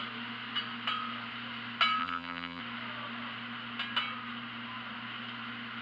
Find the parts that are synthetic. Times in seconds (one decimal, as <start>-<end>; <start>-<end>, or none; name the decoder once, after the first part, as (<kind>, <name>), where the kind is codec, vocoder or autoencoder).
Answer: 2.0-2.6 (vocoder, BigVGAN v2)